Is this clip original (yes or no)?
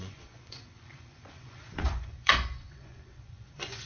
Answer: no